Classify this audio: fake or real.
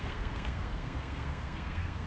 fake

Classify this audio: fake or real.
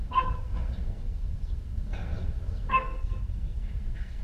fake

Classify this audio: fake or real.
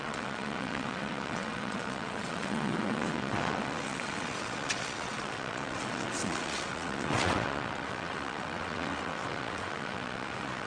fake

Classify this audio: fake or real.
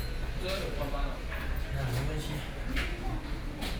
real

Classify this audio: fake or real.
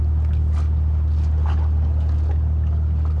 real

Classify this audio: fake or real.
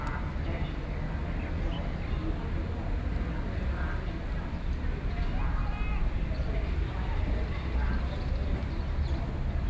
real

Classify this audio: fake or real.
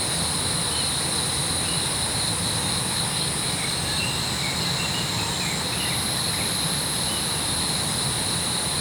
real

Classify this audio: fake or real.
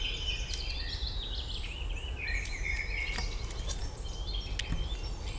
real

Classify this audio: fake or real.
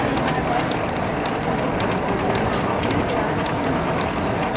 real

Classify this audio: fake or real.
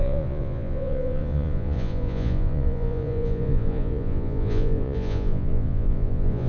fake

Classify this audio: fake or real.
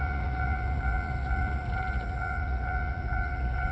fake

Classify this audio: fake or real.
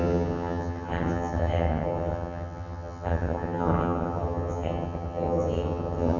fake